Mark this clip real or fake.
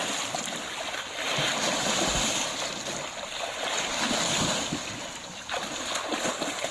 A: real